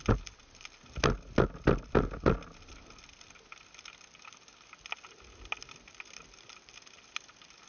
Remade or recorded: recorded